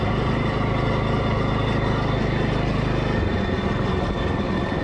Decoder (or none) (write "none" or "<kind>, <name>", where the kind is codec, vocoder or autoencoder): none